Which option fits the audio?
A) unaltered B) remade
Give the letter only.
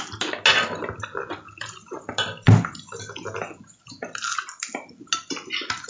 A